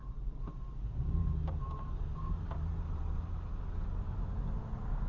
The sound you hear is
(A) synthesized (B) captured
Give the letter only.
A